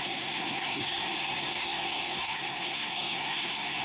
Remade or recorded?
remade